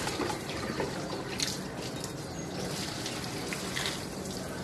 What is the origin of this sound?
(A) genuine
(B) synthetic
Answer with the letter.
A